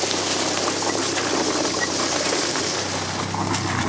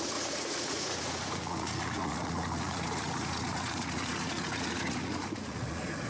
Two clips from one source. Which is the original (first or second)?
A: first